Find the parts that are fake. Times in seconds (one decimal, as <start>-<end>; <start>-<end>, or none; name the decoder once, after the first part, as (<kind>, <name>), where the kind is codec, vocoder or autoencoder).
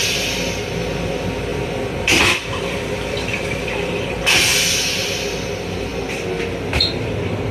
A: 1.5-4.2 (vocoder, BigVGAN v2)